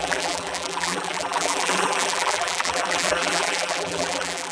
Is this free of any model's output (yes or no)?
no